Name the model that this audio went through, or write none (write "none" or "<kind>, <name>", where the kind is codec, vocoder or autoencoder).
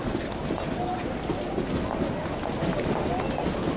none